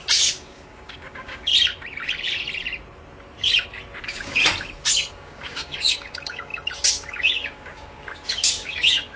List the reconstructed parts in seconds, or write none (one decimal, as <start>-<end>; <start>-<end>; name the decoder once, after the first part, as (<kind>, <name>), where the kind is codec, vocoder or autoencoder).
0.0-1.5 (codec, DAC); 4.0-4.4; 5.1-9.2

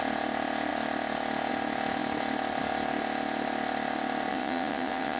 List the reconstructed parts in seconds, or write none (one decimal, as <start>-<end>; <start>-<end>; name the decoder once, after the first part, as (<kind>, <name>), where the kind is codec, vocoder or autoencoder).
4.3-5.2 (vocoder, WaveNeXt)

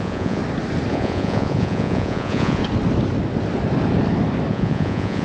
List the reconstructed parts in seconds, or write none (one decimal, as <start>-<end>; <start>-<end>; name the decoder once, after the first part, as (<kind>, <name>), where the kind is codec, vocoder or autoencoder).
0.0-0.4 (vocoder, Vocos); 0.9-2.6; 4.5-5.2

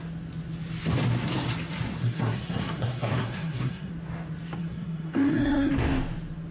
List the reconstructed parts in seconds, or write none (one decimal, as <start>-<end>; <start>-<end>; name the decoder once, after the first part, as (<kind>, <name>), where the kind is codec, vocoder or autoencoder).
2.0-3.9 (codec, SNAC); 4.6-5.7

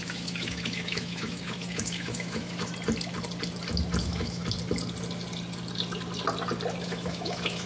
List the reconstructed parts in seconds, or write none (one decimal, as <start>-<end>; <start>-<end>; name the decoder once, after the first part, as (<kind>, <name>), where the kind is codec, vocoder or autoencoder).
0.0-2.7 (autoencoder, DAC-VAE); 4.0-4.4; 6.8-7.7

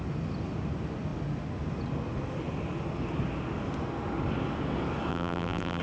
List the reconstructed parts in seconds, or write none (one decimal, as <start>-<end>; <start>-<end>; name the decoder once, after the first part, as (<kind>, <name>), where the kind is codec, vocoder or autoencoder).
5.1-5.8 (vocoder, BigVGAN v2)